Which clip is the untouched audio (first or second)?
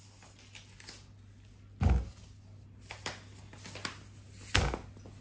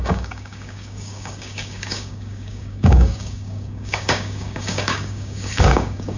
first